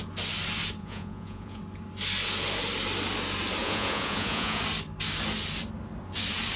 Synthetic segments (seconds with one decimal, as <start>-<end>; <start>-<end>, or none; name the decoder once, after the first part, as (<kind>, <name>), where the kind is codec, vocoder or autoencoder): 0.8-1.6 (vocoder, Vocos); 3.6-4.6